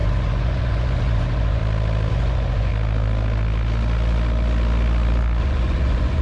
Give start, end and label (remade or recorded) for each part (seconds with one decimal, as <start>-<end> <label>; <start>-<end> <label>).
0.0-1.6 remade; 1.6-2.1 recorded; 2.1-2.7 remade; 2.7-5.4 recorded; 5.4-6.2 remade